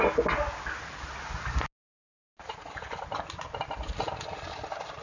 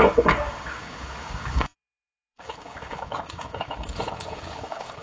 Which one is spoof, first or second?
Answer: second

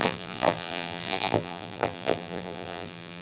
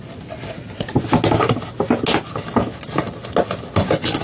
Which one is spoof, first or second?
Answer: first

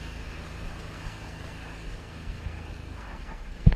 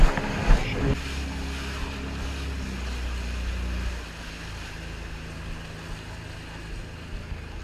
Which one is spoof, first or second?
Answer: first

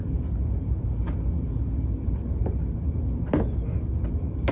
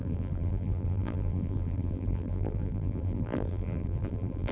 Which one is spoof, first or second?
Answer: second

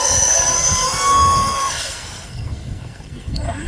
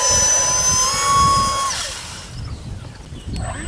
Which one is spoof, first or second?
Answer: first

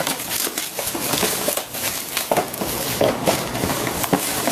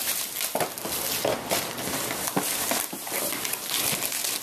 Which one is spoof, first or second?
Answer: first